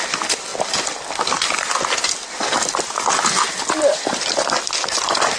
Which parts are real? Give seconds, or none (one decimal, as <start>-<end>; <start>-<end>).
0.0-5.4